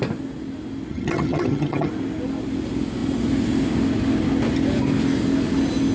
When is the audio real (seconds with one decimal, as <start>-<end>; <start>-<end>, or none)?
0.0-0.9; 1.9-5.9